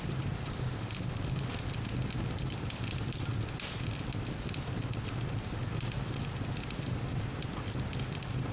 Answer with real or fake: fake